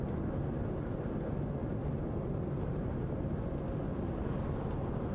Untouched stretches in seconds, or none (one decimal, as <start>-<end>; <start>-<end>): 0.0-5.1

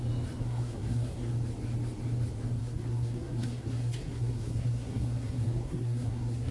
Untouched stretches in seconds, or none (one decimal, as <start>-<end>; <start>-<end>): 0.0-0.4; 1.3-2.6

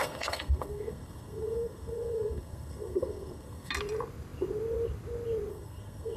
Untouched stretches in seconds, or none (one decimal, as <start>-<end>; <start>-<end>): 3.7-5.5

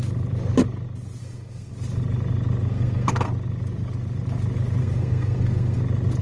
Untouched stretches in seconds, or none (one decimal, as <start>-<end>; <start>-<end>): 0.0-1.2; 1.7-2.7; 3.3-4.8; 5.8-6.2

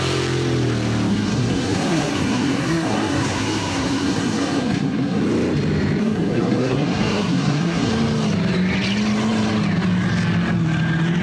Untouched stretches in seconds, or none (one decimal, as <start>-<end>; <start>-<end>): 0.0-1.1; 5.2-6.0; 7.9-11.2

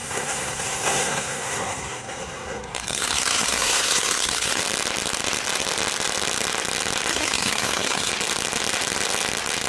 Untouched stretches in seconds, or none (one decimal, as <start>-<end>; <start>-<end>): 4.6-7.1; 8.1-9.7